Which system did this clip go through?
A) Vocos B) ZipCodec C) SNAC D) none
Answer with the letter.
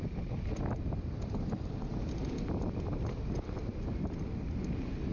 D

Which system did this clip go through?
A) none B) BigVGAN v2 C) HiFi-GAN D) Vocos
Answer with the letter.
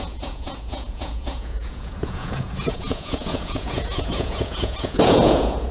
D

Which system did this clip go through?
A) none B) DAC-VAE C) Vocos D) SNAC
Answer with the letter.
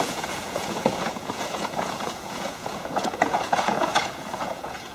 C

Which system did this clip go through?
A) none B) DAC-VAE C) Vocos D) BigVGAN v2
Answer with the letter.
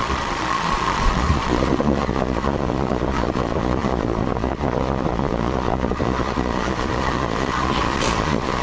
C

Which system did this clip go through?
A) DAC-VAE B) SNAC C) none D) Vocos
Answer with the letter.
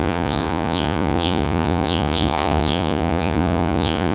D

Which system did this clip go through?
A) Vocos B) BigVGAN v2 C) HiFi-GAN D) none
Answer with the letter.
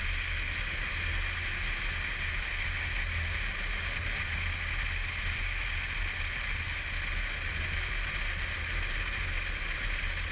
D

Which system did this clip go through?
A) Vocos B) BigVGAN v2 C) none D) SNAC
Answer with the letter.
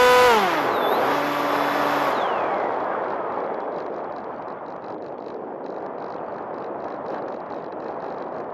C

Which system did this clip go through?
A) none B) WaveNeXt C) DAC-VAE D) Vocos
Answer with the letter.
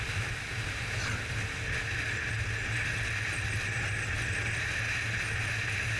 A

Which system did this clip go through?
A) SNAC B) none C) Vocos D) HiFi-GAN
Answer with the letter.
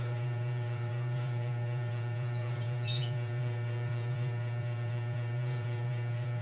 C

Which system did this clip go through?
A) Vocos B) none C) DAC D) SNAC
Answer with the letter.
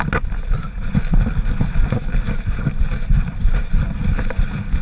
B